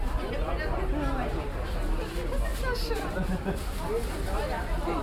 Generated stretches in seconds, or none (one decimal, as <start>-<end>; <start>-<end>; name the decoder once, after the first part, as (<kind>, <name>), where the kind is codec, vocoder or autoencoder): none